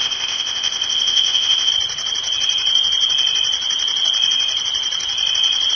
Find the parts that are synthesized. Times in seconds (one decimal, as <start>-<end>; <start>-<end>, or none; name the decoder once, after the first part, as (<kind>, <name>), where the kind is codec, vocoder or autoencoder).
0.0-1.7 (codec, ZipCodec)